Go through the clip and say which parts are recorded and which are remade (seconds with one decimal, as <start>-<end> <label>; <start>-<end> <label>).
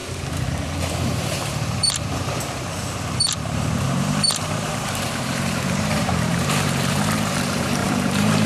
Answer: 0.0-0.9 recorded; 0.9-8.5 remade